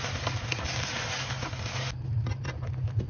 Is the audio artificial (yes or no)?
no